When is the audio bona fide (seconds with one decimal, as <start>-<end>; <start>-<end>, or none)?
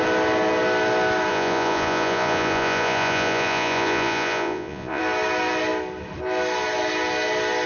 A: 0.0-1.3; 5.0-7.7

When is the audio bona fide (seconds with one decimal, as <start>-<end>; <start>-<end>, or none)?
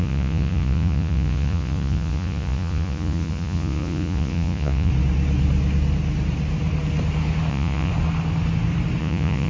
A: 4.9-7.5; 7.9-9.0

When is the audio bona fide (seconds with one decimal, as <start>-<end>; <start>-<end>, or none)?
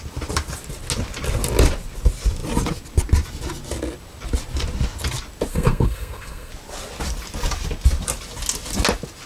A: 0.0-5.5; 6.5-9.3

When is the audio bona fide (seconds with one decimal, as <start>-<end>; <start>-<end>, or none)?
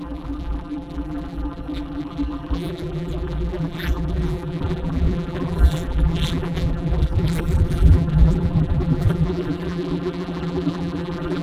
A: none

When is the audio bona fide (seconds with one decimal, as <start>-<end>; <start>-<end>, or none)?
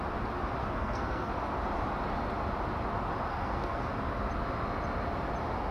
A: 0.0-0.6; 1.3-3.3; 3.9-5.7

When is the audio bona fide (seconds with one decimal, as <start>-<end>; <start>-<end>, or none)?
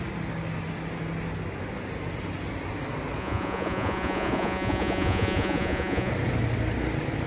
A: 0.0-3.2; 6.1-7.3